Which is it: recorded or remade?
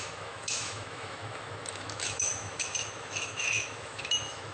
remade